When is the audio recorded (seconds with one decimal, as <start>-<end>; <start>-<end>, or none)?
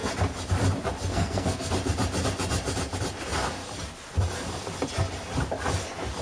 0.0-1.1; 1.7-6.2